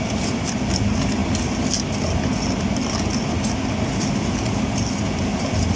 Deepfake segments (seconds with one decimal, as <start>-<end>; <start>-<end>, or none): none